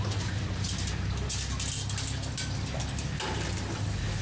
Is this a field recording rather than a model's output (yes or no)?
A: yes